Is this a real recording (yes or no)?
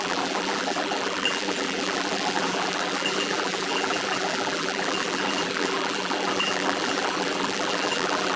no